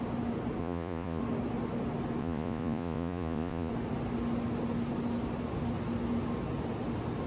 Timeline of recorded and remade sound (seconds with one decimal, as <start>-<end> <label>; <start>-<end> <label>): 0.0-0.6 recorded; 0.6-1.2 remade; 1.2-2.2 recorded; 2.2-3.7 remade; 3.7-7.3 recorded